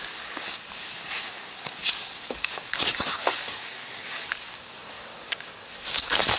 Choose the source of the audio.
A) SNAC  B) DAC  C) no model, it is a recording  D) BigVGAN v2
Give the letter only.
B